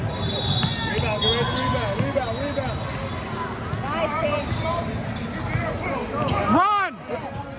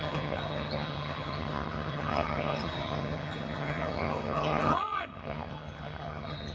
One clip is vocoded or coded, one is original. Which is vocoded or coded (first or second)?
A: second